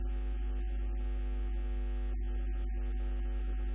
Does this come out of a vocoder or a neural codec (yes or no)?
no